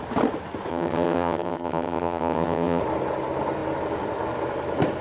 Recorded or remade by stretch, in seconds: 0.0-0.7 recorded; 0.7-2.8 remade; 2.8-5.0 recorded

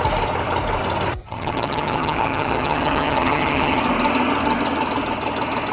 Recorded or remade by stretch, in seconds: 0.0-1.2 recorded; 1.2-3.8 remade; 3.8-5.7 recorded

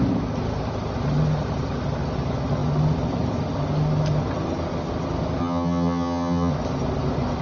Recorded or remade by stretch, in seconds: 0.0-5.4 recorded; 5.4-6.5 remade; 6.5-7.4 recorded

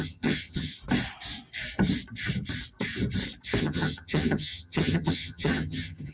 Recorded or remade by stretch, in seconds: 0.0-0.7 remade; 0.7-3.6 recorded; 3.6-6.1 remade

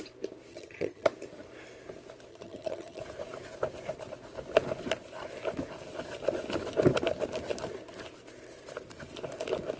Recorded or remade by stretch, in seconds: 0.0-0.5 recorded; 0.5-1.1 remade; 1.1-2.3 recorded; 2.3-3.0 remade; 3.0-9.8 recorded

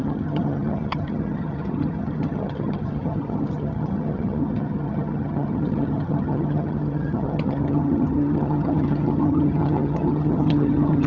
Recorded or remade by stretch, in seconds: 0.0-11.1 remade